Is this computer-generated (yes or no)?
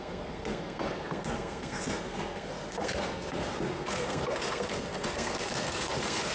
yes